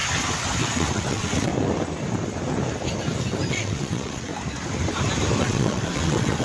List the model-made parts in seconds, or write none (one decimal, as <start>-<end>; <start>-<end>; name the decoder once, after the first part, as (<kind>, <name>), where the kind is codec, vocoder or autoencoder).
0.6-1.5 (vocoder, WaveNeXt); 3.5-4.3; 5.4-6.4